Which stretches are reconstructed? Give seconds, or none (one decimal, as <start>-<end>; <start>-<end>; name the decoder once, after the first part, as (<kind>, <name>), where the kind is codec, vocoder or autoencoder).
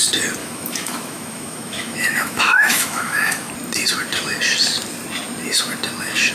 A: 0.4-3.5 (autoencoder, DAC-VAE)